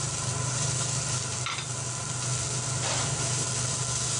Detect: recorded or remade recorded